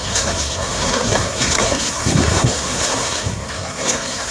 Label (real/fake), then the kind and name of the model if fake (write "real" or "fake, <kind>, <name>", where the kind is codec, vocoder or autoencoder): fake, codec, SNAC